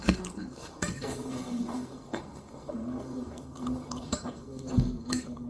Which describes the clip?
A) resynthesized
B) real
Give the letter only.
A